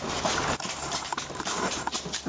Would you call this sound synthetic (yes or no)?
no